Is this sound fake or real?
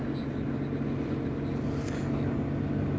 real